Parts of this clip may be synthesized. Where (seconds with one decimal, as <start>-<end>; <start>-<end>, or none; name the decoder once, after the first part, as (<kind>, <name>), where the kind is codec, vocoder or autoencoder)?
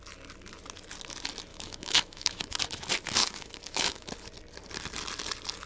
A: 1.5-2.6 (autoencoder, DAC-VAE); 3.2-4.1